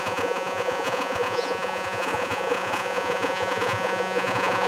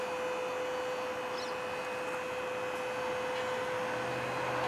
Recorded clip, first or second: second